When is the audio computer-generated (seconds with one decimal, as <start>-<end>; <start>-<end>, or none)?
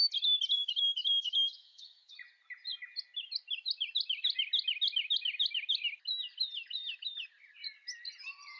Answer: 0.6-2.2